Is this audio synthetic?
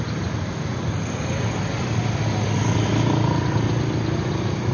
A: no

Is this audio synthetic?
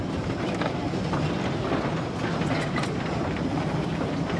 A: no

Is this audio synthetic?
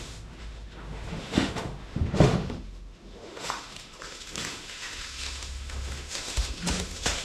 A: yes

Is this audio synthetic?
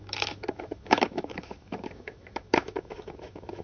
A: yes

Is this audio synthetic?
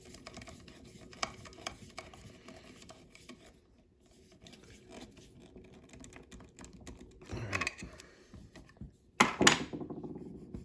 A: no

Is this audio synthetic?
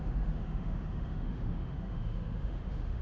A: yes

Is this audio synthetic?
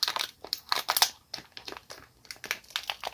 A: no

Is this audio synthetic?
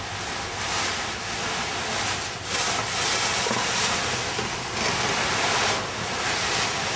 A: no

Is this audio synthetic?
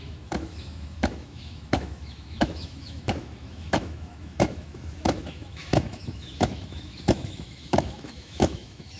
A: yes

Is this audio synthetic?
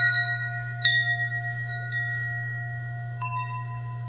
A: yes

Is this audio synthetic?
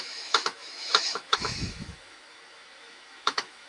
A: yes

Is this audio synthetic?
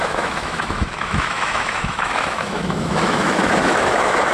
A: yes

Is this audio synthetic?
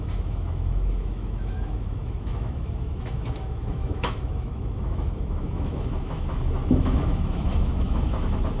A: yes